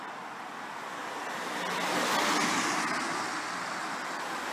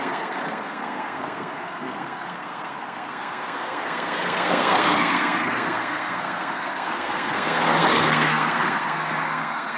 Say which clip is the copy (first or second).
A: second